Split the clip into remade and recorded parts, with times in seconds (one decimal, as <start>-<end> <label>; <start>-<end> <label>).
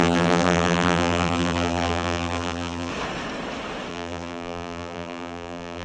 0.0-2.9 remade; 2.9-3.9 recorded; 3.9-5.8 remade